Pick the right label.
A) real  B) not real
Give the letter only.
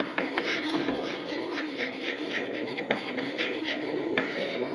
B